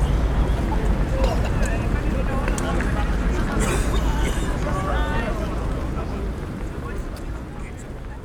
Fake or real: real